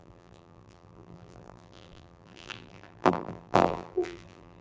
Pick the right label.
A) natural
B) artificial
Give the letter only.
B